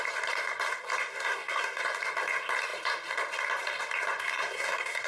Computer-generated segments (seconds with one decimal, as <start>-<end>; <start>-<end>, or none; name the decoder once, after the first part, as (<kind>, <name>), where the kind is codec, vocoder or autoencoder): 1.1-1.8 (codec, SNAC); 4.2-5.1